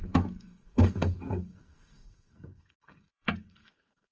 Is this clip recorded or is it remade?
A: remade